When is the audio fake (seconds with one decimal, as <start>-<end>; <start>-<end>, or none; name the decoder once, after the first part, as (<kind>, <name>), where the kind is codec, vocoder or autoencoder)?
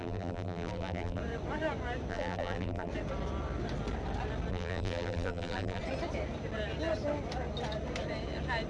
0.0-1.2 (vocoder, BigVGAN v2); 2.1-2.9; 4.5-5.8